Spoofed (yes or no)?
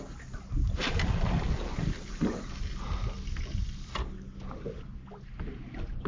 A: no